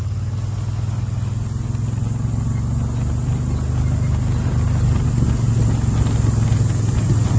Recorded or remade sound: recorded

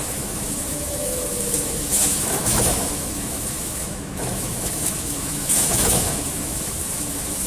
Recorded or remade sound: remade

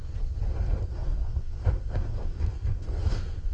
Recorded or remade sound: remade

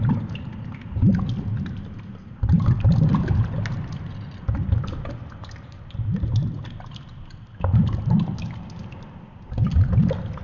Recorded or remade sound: recorded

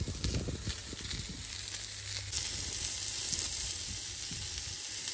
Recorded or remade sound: recorded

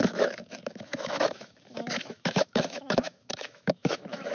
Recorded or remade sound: remade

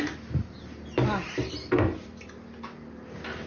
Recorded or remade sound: recorded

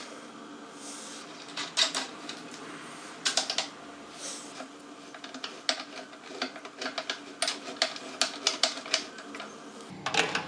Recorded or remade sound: recorded